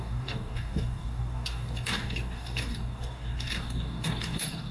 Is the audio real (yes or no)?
no